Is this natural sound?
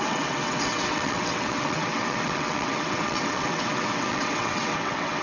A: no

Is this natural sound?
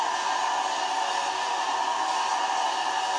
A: yes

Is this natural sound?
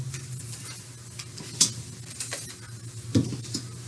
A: yes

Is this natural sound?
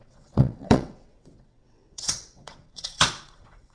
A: no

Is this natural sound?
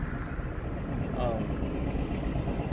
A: yes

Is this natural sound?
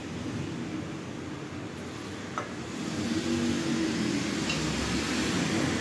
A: yes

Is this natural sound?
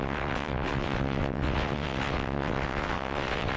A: no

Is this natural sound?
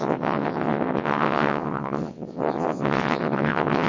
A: no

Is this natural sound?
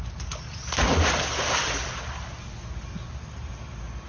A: yes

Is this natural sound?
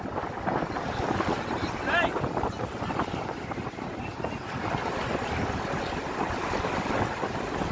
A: yes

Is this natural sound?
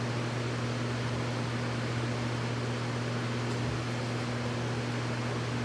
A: yes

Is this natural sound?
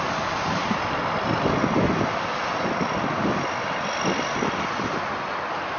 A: yes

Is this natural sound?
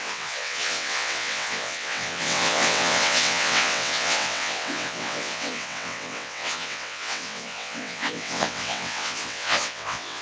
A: no